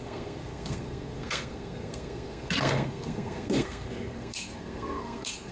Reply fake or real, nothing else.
fake